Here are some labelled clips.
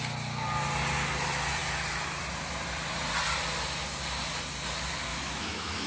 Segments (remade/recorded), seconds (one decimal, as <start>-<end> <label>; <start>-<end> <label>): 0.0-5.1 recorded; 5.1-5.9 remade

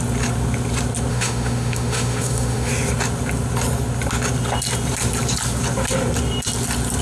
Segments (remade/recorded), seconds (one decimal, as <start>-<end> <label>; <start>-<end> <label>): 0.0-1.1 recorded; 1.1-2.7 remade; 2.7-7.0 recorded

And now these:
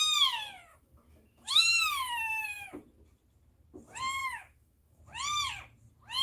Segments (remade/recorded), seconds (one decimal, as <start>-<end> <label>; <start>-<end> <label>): 0.0-0.7 recorded; 0.7-2.7 remade; 2.7-4.2 recorded; 4.2-5.0 remade; 5.0-6.2 recorded